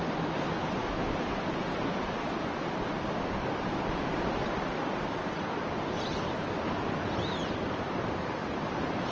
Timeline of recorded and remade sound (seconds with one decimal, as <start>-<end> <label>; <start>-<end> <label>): 0.0-9.1 recorded